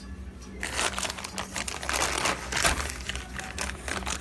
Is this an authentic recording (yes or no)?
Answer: yes